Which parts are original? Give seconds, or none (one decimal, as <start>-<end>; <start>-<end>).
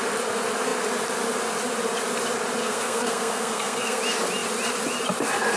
0.0-2.6; 4.0-5.6